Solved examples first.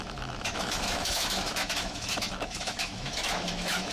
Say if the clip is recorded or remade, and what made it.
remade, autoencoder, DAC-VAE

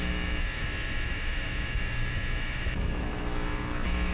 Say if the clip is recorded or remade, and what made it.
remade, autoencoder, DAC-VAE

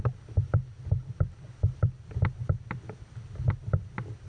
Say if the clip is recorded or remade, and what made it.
recorded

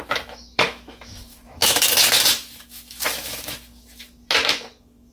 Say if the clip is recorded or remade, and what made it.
remade, autoencoder, DAC-VAE